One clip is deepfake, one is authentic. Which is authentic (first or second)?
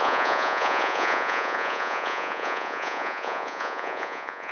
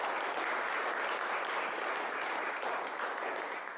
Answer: second